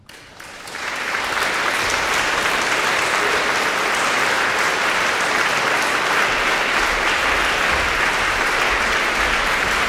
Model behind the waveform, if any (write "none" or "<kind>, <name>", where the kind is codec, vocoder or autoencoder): none